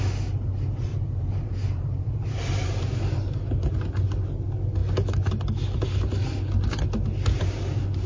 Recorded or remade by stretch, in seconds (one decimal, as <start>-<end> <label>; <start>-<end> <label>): 0.0-0.9 recorded; 0.9-3.2 remade; 3.2-8.1 recorded

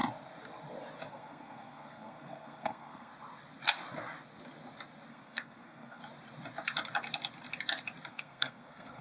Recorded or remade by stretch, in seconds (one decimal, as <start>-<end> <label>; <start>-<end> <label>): 0.0-1.1 recorded; 1.1-3.1 remade; 3.1-5.1 recorded; 5.1-6.0 remade; 6.0-8.1 recorded; 8.1-9.0 remade